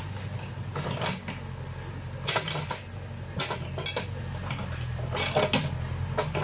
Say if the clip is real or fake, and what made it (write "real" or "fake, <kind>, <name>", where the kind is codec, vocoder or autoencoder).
real